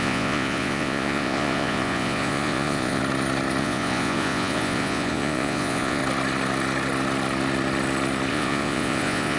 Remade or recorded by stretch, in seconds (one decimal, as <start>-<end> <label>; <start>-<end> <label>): 0.0-3.0 remade; 3.0-3.6 recorded; 3.6-6.0 remade; 6.0-8.3 recorded; 8.3-9.4 remade